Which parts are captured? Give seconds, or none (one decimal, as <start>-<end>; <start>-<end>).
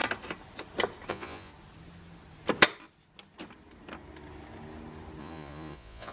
0.0-1.1; 1.5-5.2